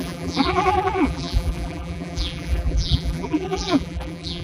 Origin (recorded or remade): remade